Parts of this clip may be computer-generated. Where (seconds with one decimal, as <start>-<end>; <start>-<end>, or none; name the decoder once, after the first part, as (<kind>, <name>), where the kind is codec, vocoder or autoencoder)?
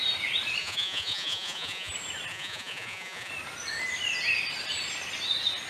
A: 0.6-1.9 (vocoder, Vocos); 2.3-3.3